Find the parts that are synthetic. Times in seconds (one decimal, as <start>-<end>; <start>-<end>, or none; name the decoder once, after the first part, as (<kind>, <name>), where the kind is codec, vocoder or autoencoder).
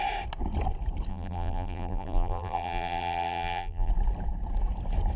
1.1-3.9 (vocoder, BigVGAN v2)